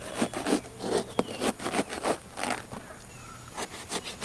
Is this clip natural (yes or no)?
yes